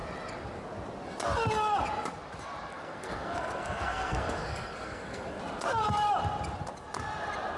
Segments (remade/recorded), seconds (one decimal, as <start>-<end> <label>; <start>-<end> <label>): 0.0-2.7 recorded; 2.7-5.4 remade; 5.4-7.6 recorded

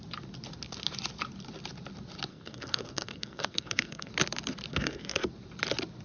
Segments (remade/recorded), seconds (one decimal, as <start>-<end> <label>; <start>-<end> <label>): 0.0-2.3 recorded; 2.3-4.1 remade; 4.1-4.7 recorded; 4.7-5.3 remade; 5.3-6.0 recorded

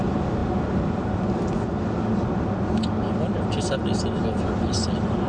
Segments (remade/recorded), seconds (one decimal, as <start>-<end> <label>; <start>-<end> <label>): 0.0-5.3 recorded

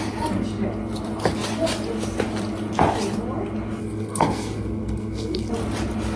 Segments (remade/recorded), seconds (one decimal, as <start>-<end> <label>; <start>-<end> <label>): 0.0-3.8 recorded; 3.8-5.5 remade; 5.5-6.2 recorded

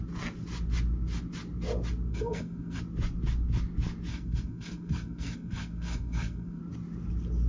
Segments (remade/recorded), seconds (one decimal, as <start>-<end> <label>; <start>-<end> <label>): 0.0-2.1 recorded; 2.1-2.8 remade; 2.8-4.1 recorded; 4.1-6.6 remade; 6.6-7.5 recorded